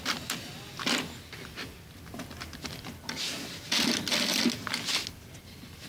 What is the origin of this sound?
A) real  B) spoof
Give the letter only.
A